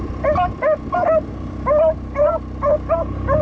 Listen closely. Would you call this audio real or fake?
real